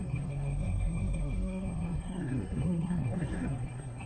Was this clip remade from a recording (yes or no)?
yes